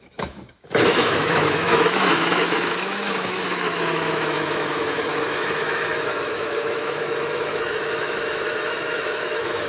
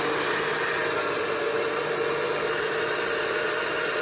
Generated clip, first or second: first